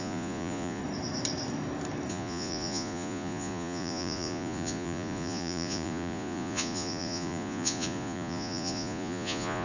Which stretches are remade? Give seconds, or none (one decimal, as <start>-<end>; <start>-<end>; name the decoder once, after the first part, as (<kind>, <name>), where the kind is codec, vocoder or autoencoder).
0.0-0.8 (vocoder, Vocos); 2.1-9.6